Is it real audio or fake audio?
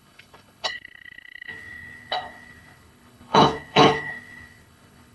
fake